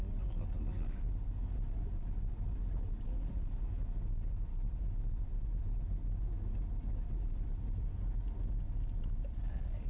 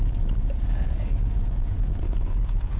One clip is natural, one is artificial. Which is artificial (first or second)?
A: second